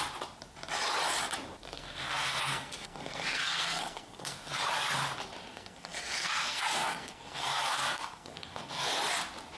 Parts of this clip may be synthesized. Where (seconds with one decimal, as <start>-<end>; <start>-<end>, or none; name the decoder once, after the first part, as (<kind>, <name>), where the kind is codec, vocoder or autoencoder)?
1.6-4.5 (codec, SNAC); 5.5-8.9